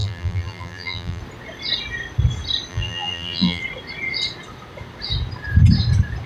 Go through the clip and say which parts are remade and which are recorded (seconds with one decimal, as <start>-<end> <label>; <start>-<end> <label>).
0.0-1.2 remade; 1.2-2.7 recorded; 2.7-3.6 remade; 3.6-6.3 recorded